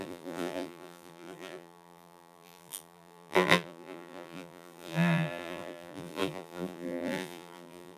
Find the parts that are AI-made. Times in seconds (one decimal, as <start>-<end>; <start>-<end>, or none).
0.0-8.0